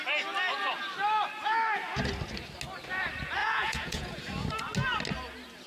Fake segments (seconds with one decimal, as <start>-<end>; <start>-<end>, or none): 3.4-4.2